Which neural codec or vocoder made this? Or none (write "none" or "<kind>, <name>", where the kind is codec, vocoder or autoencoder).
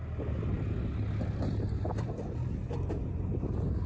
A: none